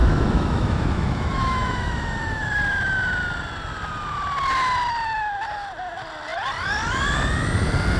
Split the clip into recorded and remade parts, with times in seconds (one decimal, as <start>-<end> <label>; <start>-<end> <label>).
0.0-2.4 remade; 2.4-8.0 recorded